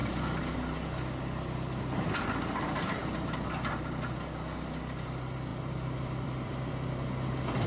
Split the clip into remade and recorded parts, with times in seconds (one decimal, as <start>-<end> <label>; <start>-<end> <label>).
0.0-5.5 recorded; 5.5-6.7 remade; 6.7-7.7 recorded